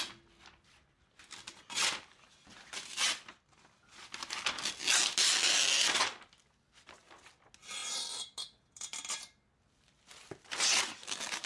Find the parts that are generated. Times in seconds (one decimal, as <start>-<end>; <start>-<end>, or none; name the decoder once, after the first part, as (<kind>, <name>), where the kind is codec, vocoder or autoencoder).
none